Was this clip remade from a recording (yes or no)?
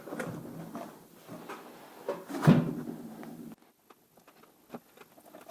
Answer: no